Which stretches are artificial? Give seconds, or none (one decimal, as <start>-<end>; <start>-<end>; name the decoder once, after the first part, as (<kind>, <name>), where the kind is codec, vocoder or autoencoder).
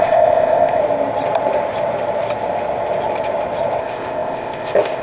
0.0-0.8 (codec, ZipCodec); 3.8-5.0